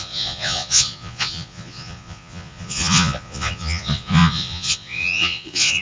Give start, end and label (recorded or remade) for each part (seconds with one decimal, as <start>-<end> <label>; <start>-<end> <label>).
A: 0.0-5.8 remade